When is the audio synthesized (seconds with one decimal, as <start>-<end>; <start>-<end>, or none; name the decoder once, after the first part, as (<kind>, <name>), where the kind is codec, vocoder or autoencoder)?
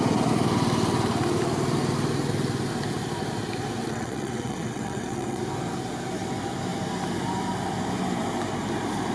3.8-5.4 (vocoder, WaveNeXt)